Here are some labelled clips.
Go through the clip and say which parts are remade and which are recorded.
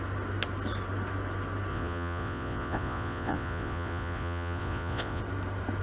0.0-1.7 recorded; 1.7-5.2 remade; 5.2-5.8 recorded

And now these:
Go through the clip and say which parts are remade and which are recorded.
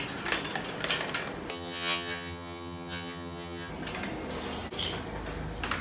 0.0-1.5 recorded; 1.5-3.7 remade; 3.7-5.8 recorded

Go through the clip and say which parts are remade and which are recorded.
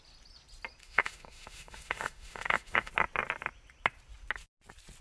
0.0-0.8 recorded; 0.8-2.9 remade; 2.9-5.0 recorded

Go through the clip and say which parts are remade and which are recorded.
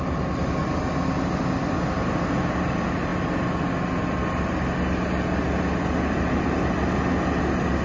0.0-7.8 recorded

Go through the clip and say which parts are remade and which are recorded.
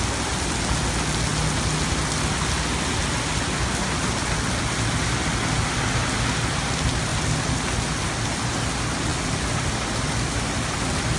0.0-11.2 recorded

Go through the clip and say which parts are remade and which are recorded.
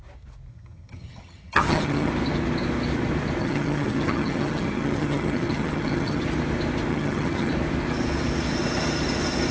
0.0-0.5 recorded; 0.5-2.1 remade; 2.1-3.4 recorded; 3.4-6.2 remade; 6.2-6.9 recorded; 6.9-7.5 remade; 7.5-9.5 recorded